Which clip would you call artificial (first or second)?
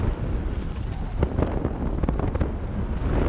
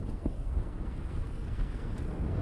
second